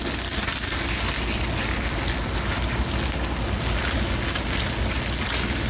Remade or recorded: recorded